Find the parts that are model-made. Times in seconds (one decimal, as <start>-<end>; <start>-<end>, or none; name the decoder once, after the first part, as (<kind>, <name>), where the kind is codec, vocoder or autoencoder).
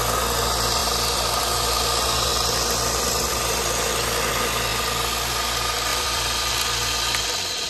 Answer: 5.9-6.5 (vocoder, BigVGAN v2)